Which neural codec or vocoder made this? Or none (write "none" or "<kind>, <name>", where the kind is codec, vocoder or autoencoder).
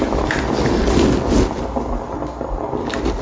none